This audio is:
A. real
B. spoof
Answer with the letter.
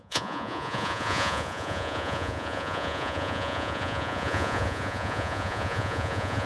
B